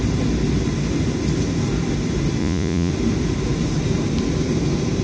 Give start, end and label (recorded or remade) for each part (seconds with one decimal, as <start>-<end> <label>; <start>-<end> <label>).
0.0-2.4 recorded; 2.4-2.9 remade; 2.9-5.0 recorded